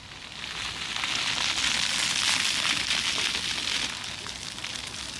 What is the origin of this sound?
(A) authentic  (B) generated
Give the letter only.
A